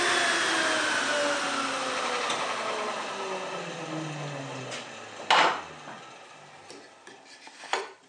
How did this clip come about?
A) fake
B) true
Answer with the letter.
B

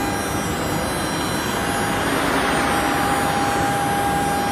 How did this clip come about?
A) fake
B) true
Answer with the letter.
B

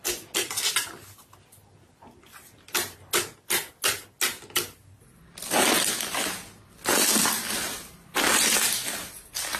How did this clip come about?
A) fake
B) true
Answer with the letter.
B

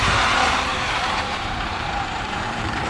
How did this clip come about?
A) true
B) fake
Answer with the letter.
B